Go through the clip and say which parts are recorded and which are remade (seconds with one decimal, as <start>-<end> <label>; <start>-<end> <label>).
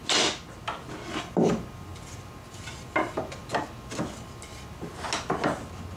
0.0-6.0 recorded